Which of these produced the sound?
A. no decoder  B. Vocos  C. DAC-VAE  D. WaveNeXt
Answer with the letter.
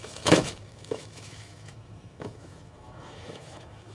C